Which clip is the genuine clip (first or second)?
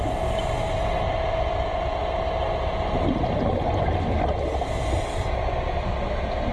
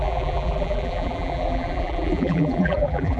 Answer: first